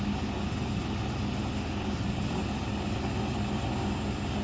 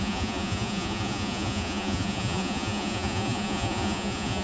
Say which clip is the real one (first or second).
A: first